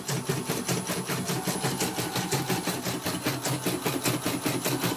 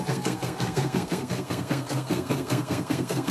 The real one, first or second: first